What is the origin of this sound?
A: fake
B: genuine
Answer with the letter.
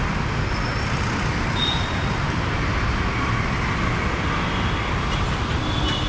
B